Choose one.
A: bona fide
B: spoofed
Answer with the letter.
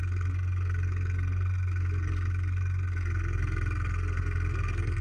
B